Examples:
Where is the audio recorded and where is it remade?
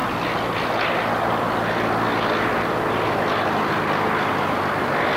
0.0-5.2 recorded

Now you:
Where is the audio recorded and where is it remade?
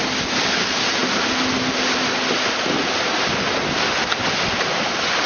0.0-5.3 recorded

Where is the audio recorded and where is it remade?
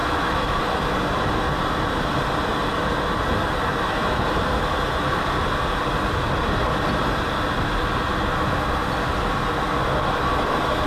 0.0-0.6 remade; 0.6-10.9 recorded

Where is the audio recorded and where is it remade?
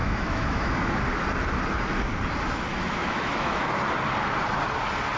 0.0-0.9 remade; 0.9-2.7 recorded; 2.7-3.7 remade; 3.7-5.2 recorded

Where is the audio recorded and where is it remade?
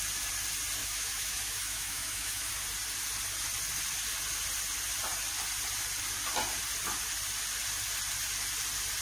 0.0-0.8 recorded; 0.8-2.5 remade; 2.5-9.0 recorded